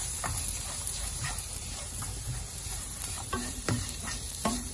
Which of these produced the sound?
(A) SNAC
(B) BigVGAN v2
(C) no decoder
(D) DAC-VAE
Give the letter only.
B